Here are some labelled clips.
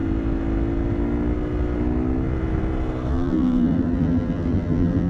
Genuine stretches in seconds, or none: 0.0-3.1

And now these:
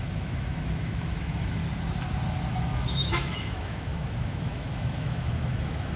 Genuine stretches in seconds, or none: 1.6-2.5

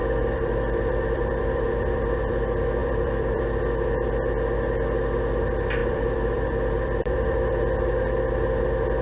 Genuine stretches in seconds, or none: 2.3-2.8; 3.4-5.8; 7.5-9.0

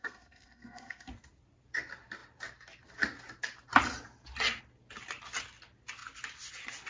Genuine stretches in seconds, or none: 1.1-6.9

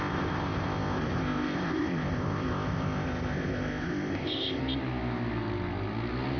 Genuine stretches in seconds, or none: 4.6-6.4

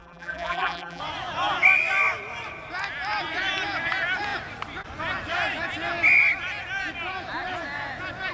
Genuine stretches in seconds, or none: 1.0-8.3